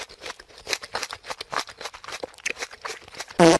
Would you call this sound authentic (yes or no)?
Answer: yes